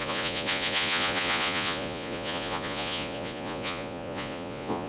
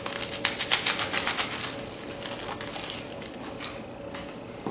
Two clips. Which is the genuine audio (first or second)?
second